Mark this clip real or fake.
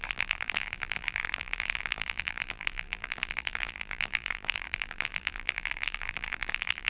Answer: fake